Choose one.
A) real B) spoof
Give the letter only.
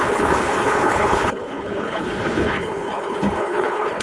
B